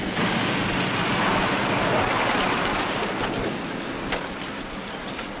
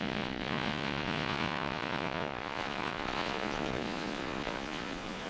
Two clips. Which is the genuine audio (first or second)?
first